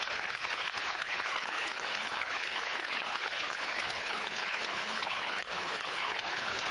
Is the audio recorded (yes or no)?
no